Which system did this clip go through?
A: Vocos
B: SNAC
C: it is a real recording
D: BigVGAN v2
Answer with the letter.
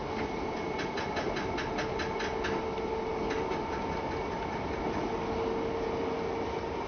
C